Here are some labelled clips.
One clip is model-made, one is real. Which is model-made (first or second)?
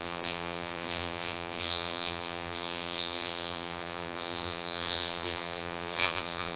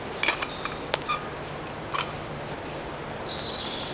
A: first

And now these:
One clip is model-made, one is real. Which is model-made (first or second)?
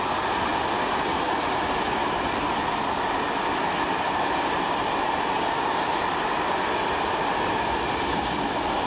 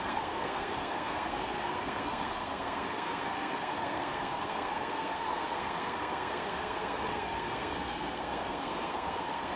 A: second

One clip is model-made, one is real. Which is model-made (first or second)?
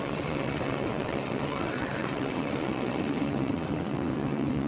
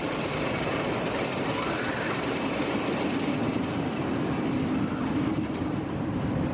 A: first